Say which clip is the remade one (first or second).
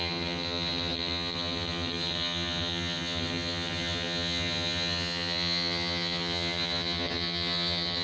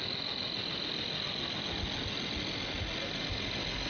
first